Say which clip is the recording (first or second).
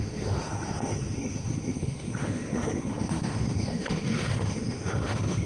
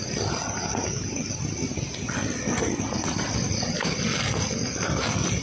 second